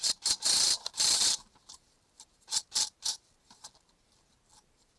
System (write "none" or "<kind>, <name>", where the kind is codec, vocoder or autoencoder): vocoder, BigVGAN v2